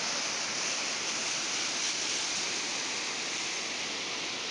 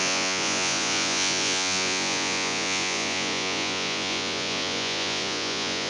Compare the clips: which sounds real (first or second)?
first